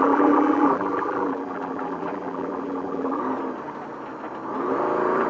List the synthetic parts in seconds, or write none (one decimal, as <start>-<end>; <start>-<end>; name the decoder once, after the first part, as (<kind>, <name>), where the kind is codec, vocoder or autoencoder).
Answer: 0.0-3.2 (vocoder, BigVGAN v2)